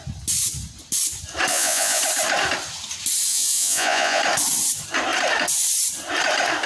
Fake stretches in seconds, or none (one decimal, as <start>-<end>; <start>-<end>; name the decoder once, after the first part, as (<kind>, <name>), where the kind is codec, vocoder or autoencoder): 1.5-2.0 (vocoder, Vocos); 3.3-4.2